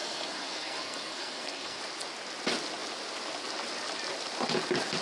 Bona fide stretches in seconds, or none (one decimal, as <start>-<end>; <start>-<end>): 1.8-5.0